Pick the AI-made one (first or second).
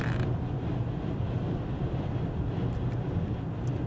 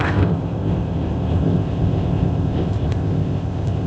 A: second